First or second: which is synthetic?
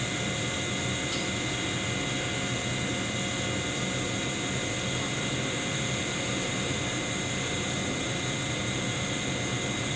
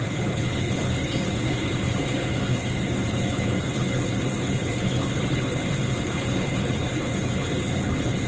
second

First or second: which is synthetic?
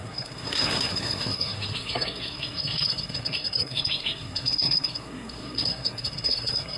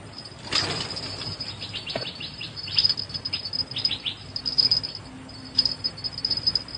first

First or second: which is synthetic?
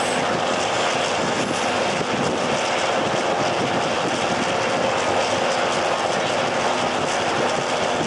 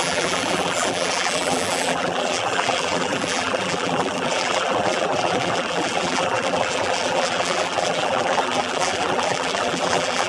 second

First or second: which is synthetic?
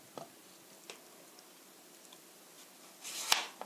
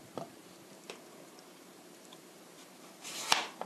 second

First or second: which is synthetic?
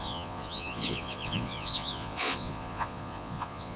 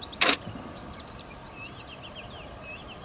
first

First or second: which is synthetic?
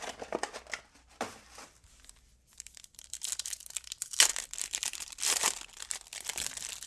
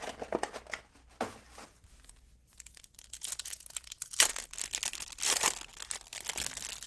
first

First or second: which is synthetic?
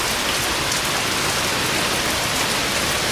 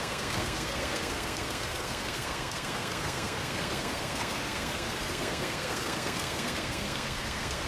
second